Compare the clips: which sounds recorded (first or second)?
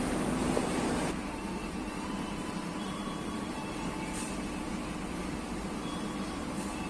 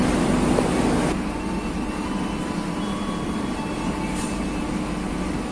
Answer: second